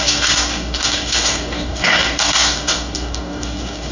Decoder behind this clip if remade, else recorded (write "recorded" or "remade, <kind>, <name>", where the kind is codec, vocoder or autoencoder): remade, codec, DAC